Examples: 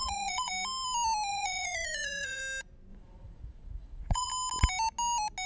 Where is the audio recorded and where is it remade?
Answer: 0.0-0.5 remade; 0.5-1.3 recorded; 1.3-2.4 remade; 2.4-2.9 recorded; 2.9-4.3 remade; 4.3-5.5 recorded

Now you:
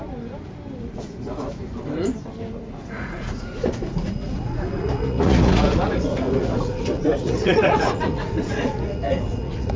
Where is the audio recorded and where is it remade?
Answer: 0.0-0.8 recorded; 0.8-1.6 remade; 1.6-2.5 recorded; 2.5-9.8 remade

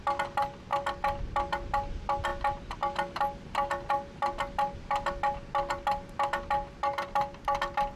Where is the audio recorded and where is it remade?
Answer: 0.0-8.0 recorded

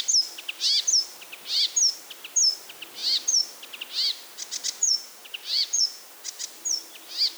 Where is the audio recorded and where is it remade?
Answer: 0.0-4.8 recorded; 4.8-6.1 remade; 6.1-7.4 recorded

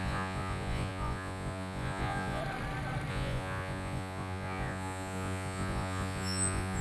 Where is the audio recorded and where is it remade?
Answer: 0.0-2.4 remade; 2.4-3.1 recorded; 3.1-6.8 remade

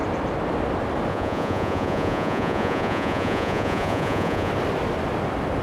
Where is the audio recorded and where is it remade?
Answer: 0.0-1.1 recorded; 1.1-4.5 remade; 4.5-5.6 recorded

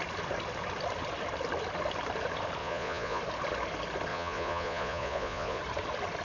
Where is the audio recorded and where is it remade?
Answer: 0.0-2.6 recorded; 2.6-3.2 remade; 3.2-4.1 recorded; 4.1-5.6 remade; 5.6-6.2 recorded

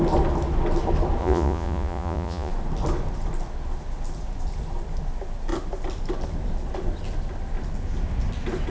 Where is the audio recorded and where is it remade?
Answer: 0.0-1.2 recorded; 1.2-2.5 remade; 2.5-8.7 recorded